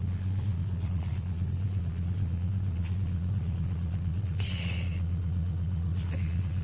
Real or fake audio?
fake